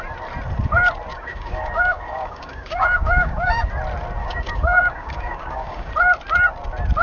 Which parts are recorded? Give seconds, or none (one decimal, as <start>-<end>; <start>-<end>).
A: 0.0-1.1; 3.7-4.2; 5.9-7.0